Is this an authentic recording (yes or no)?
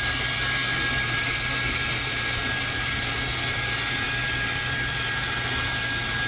yes